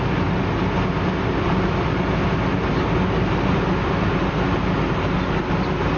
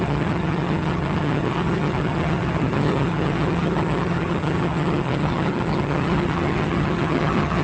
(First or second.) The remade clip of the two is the second